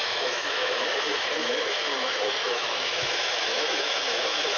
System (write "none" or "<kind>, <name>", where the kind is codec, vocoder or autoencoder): autoencoder, DAC-VAE